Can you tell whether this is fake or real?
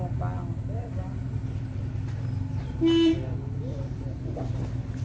real